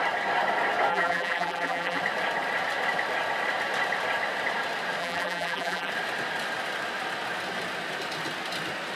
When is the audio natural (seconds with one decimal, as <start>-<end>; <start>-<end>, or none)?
0.0-0.9; 2.0-5.0; 5.9-9.0